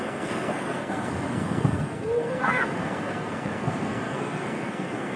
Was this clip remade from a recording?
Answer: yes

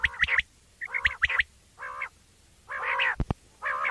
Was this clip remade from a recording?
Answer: no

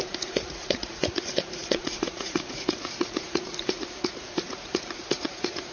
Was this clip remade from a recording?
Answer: yes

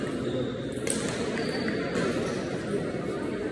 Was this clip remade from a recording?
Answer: no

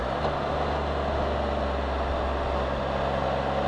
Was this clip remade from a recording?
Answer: no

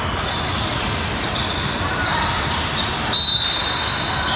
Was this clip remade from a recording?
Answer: no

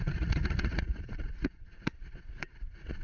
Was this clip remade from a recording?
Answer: yes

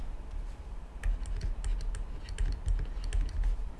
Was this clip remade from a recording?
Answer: no